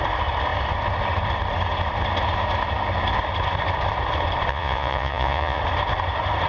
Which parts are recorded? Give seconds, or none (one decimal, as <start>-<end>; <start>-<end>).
0.0-4.5; 5.6-6.5